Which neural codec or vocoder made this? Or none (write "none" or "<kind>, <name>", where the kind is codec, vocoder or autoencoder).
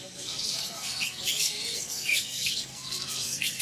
codec, SNAC